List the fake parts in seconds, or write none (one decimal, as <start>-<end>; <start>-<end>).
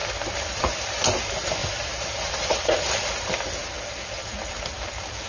0.0-0.8; 1.6-3.1; 3.6-4.6